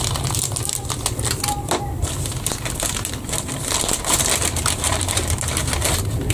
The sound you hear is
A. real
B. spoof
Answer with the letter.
B